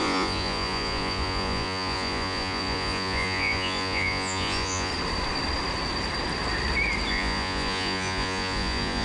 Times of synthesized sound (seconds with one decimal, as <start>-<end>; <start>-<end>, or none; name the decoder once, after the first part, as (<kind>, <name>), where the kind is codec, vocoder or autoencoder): 0.0-4.9 (vocoder, Vocos); 7.1-9.0